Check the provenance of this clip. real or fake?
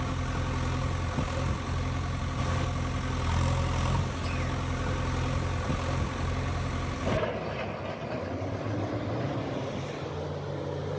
real